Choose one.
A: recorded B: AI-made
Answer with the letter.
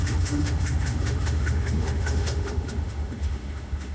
B